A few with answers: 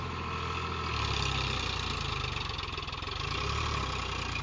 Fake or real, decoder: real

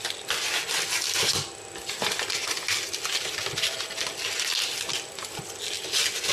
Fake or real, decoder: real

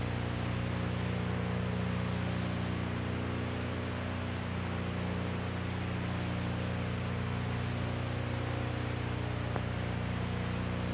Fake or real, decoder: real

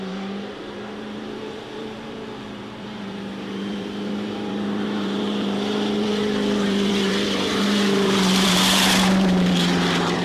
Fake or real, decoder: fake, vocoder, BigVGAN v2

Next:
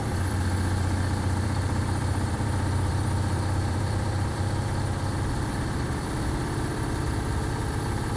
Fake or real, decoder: fake, vocoder, BigVGAN v2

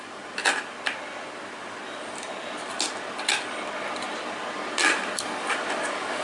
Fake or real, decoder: real